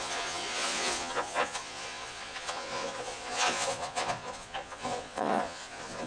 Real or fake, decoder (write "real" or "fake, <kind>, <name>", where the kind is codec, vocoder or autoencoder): fake, vocoder, Vocos